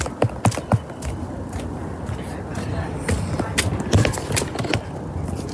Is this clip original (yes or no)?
yes